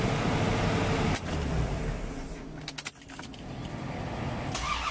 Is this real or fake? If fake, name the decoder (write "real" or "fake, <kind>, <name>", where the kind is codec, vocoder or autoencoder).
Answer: real